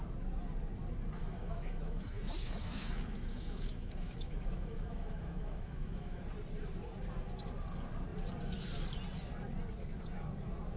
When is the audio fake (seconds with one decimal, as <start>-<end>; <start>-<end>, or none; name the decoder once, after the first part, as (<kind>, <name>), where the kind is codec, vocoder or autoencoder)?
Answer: 1.2-6.2 (autoencoder, DAC-VAE)